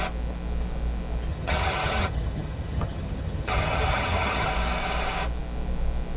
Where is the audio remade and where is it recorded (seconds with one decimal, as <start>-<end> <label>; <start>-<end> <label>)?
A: 0.0-1.3 recorded; 1.3-4.5 remade; 4.5-6.2 recorded